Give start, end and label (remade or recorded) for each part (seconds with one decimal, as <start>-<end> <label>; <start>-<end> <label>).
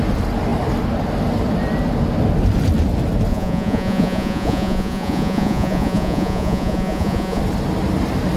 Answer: 0.0-3.3 recorded; 3.3-7.4 remade; 7.4-8.4 recorded